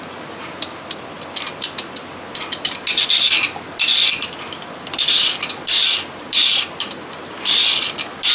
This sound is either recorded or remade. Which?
recorded